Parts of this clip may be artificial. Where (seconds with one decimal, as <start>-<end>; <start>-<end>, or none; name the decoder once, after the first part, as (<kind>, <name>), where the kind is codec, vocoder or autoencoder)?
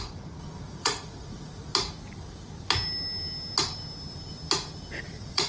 0.0-1.7 (vocoder, Vocos); 5.0-5.5